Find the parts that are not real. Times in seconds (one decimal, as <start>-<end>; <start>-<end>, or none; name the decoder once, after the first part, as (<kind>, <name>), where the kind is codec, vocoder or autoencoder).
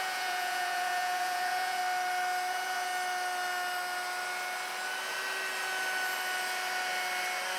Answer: 0.0-1.8 (vocoder, Vocos); 2.5-2.9